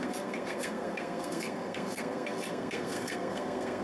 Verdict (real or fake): fake